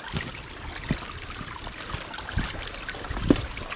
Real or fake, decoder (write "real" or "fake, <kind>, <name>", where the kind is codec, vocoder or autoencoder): real